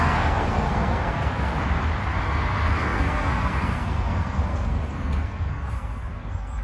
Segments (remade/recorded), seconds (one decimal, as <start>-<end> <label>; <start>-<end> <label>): 0.0-1.5 remade; 1.5-2.2 recorded; 2.2-6.6 remade